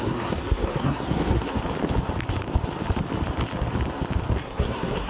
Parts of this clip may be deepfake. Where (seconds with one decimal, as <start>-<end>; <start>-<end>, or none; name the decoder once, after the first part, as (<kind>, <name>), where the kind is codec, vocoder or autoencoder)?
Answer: 0.0-1.6 (codec, SNAC); 4.4-5.1